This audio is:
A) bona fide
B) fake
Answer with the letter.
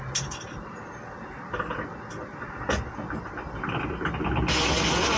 A